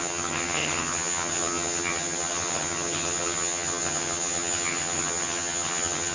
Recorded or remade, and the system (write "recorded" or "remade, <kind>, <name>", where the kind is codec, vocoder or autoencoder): remade, vocoder, HiFi-GAN